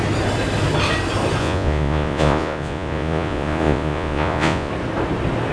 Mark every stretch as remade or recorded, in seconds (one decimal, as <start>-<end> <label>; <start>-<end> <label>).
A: 0.0-1.4 recorded; 1.4-4.7 remade; 4.7-5.5 recorded